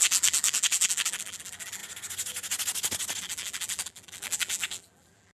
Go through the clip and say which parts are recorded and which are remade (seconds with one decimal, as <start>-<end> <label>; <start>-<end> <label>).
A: 0.0-1.8 remade; 1.8-3.2 recorded; 3.2-5.4 remade